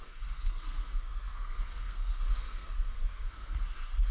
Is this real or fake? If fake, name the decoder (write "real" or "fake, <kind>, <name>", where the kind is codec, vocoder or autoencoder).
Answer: fake, codec, SNAC